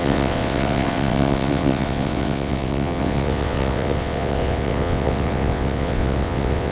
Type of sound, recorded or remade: remade